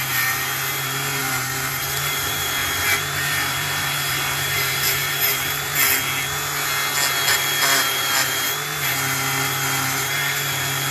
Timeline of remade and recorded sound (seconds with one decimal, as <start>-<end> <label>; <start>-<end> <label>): 0.0-5.7 remade; 5.7-7.3 recorded; 7.3-10.9 remade